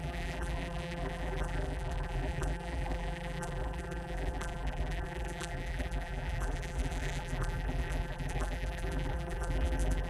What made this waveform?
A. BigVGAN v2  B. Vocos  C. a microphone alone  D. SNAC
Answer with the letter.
A